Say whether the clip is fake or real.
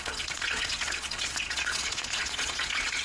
fake